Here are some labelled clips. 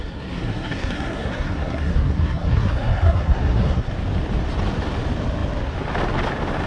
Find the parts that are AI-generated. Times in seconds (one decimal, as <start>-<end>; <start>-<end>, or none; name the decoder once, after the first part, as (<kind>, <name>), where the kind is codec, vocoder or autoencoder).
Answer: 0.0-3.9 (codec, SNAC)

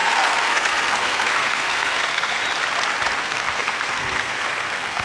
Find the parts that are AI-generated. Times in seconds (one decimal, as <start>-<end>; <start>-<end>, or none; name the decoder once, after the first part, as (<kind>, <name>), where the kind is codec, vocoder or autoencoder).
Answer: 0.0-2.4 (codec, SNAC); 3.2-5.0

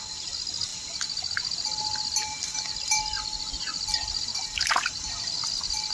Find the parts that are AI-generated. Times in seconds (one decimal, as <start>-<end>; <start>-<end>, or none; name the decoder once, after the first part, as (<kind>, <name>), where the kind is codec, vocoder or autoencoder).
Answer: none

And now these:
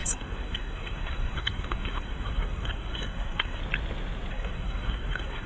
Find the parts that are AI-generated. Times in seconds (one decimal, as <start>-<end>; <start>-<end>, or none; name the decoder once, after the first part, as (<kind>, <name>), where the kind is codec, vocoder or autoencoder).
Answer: 0.0-3.6 (codec, SNAC); 4.3-5.5

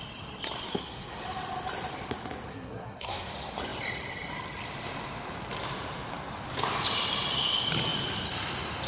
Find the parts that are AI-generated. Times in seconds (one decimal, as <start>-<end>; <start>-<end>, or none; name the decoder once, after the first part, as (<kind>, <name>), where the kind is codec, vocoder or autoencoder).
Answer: 0.7-1.2 (codec, SNAC); 2.5-3.3

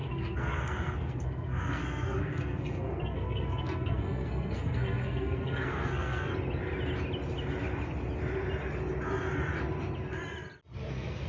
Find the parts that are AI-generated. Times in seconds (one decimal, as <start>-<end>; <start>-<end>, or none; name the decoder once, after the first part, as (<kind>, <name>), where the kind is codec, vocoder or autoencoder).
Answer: 0.0-6.3 (codec, SNAC); 10.9-11.3

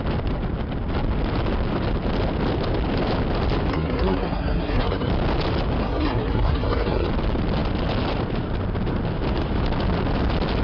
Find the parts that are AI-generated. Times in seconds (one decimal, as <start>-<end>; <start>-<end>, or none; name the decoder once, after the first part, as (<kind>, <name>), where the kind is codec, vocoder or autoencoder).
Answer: 3.7-5.1 (codec, SNAC); 5.8-7.1